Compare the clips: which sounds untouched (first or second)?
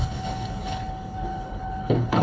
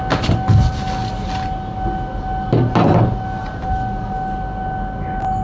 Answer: second